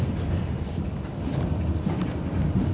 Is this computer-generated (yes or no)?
no